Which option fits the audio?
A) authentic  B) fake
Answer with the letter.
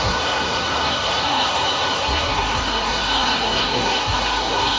B